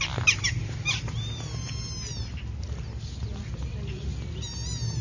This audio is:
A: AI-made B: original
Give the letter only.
B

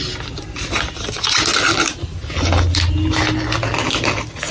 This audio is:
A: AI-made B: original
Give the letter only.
B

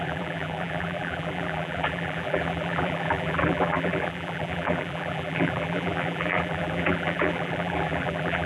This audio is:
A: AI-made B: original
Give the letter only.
A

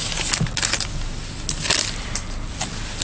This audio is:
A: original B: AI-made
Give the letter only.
A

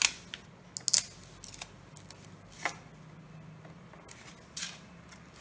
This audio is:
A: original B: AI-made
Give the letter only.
A